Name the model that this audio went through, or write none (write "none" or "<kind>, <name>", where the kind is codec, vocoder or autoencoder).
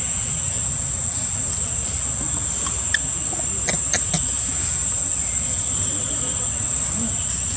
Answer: none